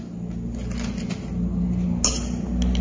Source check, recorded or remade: recorded